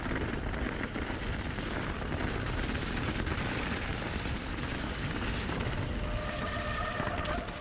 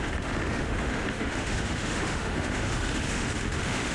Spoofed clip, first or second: second